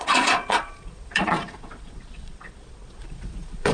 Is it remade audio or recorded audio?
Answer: remade